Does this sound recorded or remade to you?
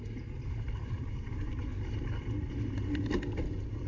recorded